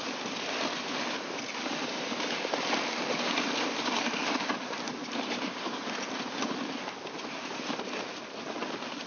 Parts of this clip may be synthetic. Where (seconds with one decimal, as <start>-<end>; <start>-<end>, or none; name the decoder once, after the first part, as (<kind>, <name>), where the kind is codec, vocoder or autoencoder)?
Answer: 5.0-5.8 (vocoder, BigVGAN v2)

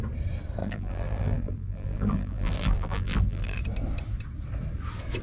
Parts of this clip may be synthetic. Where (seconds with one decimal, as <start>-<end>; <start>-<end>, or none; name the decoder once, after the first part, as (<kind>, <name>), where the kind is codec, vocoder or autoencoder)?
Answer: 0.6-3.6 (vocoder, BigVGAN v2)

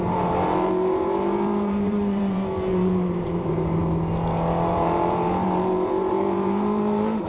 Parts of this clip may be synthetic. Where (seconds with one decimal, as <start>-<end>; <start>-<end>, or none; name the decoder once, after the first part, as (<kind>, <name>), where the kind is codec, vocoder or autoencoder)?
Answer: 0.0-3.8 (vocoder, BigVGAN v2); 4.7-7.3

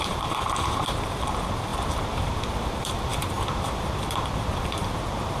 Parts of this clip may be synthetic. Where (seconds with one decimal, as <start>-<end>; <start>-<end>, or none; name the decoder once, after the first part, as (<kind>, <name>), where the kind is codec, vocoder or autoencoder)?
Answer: 0.0-5.4 (vocoder, BigVGAN v2)